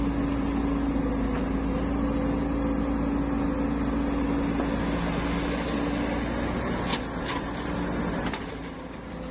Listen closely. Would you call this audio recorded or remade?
recorded